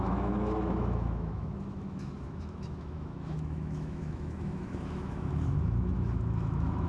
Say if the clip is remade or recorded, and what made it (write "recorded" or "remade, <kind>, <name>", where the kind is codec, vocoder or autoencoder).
remade, autoencoder, DAC-VAE